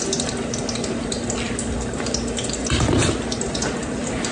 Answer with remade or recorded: recorded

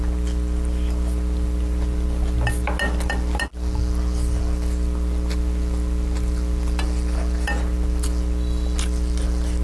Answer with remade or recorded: recorded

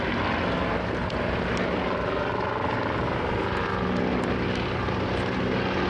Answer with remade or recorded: recorded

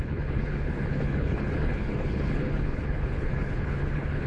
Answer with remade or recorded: remade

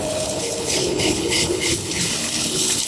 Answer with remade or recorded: remade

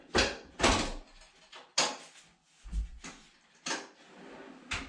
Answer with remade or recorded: recorded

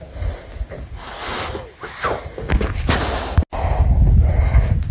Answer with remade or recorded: recorded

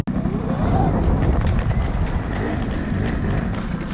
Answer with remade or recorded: recorded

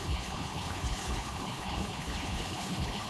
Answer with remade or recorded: remade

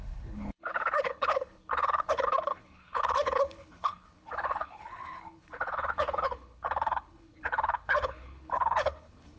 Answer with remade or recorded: remade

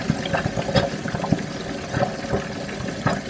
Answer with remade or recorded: recorded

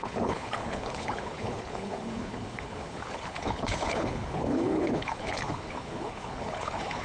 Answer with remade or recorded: remade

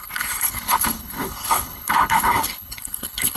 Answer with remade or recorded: remade